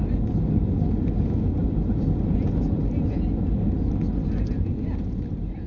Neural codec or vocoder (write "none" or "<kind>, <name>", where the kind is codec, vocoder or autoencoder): none